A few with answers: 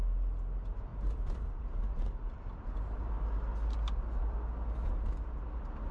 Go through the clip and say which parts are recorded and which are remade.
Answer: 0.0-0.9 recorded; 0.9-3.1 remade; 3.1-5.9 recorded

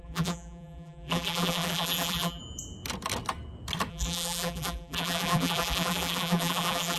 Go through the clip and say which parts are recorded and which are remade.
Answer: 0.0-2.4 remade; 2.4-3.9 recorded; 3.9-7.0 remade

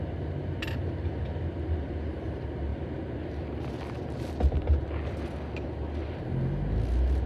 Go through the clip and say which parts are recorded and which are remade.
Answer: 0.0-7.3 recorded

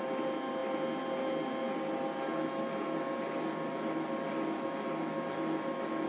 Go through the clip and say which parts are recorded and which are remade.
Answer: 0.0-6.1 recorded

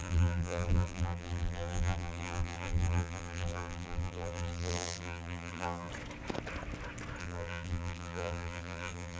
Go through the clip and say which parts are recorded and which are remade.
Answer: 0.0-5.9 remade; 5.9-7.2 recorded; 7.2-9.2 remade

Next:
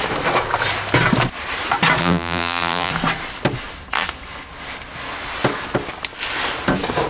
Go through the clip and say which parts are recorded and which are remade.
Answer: 0.0-2.0 recorded; 2.0-2.9 remade; 2.9-7.1 recorded

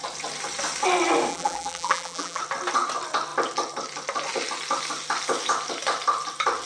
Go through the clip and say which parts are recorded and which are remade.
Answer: 0.0-1.3 recorded; 1.3-2.4 remade; 2.4-6.7 recorded

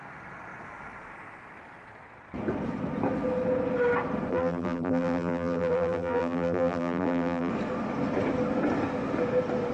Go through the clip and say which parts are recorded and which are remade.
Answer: 0.0-4.3 recorded; 4.3-7.5 remade; 7.5-9.7 recorded